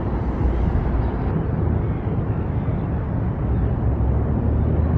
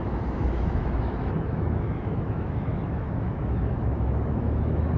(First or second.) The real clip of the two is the first